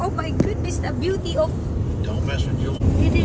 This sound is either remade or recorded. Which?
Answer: recorded